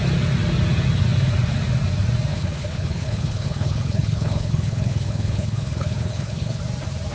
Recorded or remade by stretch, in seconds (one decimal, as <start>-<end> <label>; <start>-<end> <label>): 0.0-2.3 recorded; 2.3-6.6 remade; 6.6-7.1 recorded